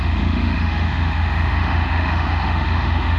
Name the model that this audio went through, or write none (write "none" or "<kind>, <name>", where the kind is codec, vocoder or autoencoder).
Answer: autoencoder, DAC-VAE